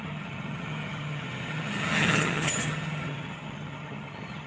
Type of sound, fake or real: fake